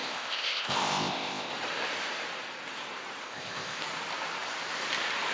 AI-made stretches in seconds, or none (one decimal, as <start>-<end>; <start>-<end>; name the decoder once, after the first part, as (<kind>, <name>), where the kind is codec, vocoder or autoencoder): 0.0-1.5 (codec, ZipCodec); 3.2-3.8